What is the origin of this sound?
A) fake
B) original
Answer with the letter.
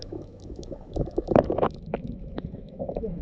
A